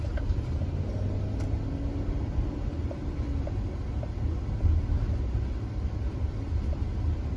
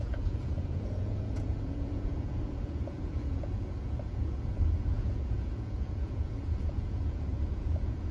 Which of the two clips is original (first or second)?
first